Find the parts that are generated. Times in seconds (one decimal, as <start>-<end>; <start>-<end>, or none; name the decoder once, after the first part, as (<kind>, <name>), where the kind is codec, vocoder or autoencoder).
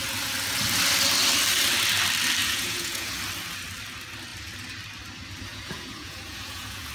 2.4-3.1 (vocoder, Vocos); 5.5-6.9